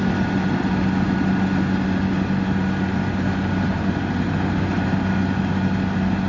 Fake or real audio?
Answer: real